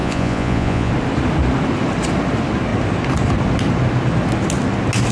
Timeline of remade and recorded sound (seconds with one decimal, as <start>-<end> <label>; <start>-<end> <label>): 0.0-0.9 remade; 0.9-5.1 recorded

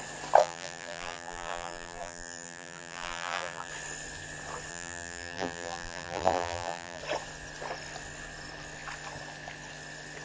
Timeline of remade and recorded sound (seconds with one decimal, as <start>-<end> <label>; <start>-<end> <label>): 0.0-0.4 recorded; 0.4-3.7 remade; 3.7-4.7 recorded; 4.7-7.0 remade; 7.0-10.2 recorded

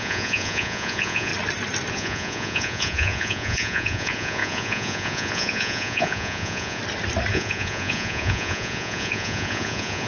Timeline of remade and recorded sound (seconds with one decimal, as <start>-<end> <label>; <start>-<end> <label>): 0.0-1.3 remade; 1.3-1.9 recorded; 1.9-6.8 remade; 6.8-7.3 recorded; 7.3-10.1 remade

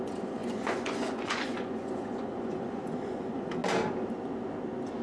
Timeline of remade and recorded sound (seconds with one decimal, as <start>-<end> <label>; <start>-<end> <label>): 0.0-3.6 remade; 3.6-5.0 recorded

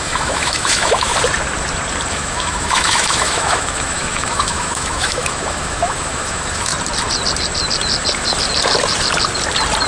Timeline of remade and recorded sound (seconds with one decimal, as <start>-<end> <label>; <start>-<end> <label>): 0.0-1.1 remade; 1.1-2.1 recorded; 2.1-6.7 remade; 6.7-9.9 recorded

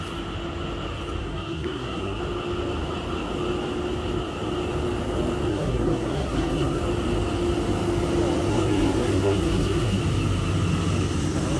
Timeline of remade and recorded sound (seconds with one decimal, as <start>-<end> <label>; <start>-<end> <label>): 0.0-1.2 recorded; 1.2-2.2 remade; 2.2-5.5 recorded; 5.5-6.8 remade; 6.8-8.5 recorded; 8.5-10.0 remade; 10.0-11.6 recorded